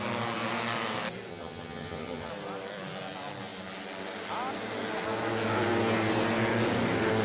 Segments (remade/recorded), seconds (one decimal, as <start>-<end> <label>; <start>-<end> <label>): 0.0-1.3 recorded; 1.3-2.3 remade; 2.3-7.2 recorded